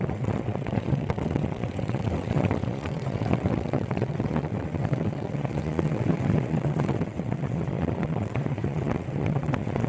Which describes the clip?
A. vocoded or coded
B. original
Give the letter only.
A